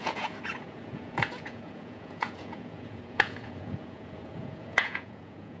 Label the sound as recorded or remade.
remade